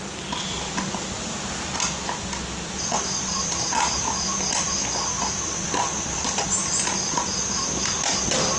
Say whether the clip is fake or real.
real